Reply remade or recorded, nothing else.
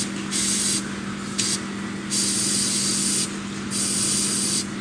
recorded